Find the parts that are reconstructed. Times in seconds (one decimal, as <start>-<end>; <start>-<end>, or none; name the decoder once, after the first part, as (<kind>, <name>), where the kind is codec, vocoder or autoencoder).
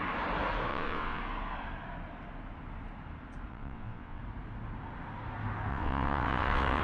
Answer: 0.7-1.2 (vocoder, WaveNeXt); 3.5-4.2; 5.7-6.8